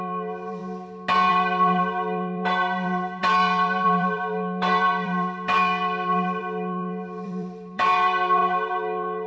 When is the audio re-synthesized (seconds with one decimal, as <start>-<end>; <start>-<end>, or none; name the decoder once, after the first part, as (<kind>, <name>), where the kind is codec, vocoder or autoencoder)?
0.0-0.6 (vocoder, BigVGAN v2); 1.3-9.3